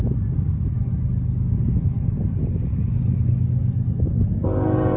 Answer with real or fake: real